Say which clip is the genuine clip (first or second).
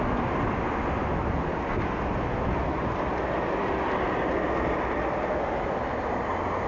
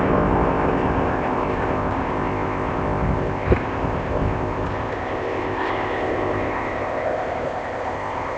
first